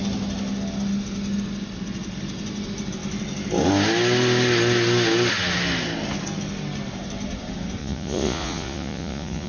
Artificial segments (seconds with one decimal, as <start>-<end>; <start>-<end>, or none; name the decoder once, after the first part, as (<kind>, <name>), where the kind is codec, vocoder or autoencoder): 7.8-9.5 (vocoder, Vocos)